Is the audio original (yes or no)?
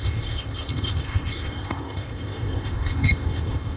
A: no